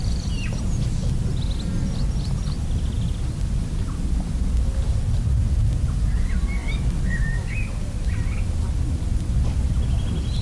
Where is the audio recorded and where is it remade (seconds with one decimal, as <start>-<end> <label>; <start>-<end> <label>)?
0.0-10.4 recorded